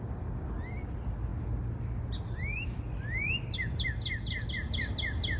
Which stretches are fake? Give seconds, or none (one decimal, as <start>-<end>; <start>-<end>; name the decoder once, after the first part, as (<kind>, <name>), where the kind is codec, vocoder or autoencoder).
none